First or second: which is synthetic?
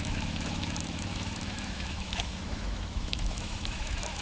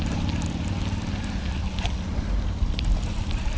first